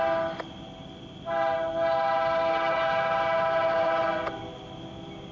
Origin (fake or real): real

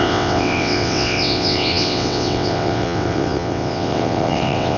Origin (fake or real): fake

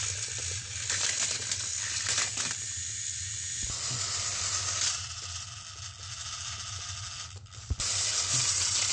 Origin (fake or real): real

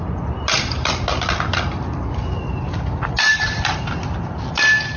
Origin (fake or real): real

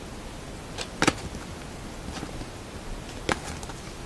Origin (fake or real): real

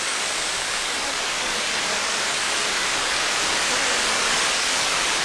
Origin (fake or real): fake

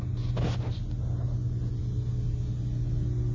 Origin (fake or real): real